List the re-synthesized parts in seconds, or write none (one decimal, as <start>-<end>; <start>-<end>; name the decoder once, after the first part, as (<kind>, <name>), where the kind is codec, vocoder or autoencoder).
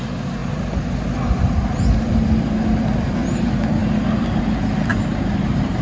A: 3.8-4.4 (vocoder, BigVGAN v2); 4.9-5.8